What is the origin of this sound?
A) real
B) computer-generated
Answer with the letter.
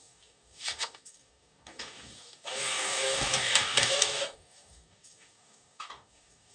B